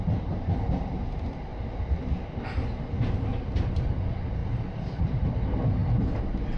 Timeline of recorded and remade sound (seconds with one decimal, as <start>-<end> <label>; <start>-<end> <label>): 0.0-4.4 recorded; 4.4-5.3 remade; 5.3-6.6 recorded

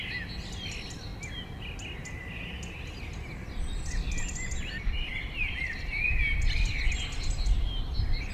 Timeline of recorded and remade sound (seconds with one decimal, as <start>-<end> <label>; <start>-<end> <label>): 0.0-8.3 recorded

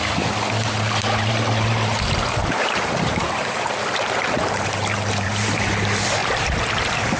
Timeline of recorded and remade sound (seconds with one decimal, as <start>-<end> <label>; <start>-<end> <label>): 0.0-0.6 recorded; 0.6-3.6 remade; 3.6-4.4 recorded; 4.4-5.7 remade; 5.7-6.2 recorded; 6.2-6.7 remade; 6.7-7.2 recorded

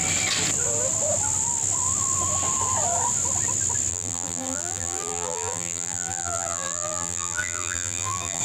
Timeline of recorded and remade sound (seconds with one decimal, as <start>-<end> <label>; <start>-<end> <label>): 0.0-3.9 recorded; 3.9-8.4 remade

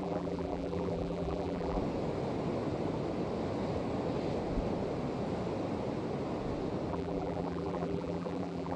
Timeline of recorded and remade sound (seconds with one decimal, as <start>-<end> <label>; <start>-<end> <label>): 0.0-1.8 remade; 1.8-6.9 recorded; 6.9-8.8 remade

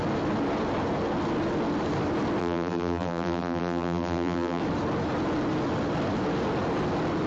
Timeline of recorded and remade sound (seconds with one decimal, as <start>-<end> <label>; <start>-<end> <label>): 0.0-2.4 recorded; 2.4-4.6 remade; 4.6-7.3 recorded